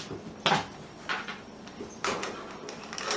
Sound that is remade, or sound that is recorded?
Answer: recorded